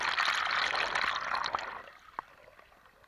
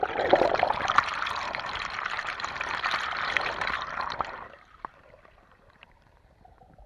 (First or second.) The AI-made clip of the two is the second